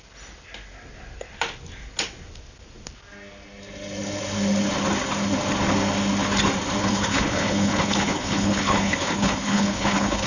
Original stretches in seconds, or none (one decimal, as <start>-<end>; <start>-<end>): 0.0-6.8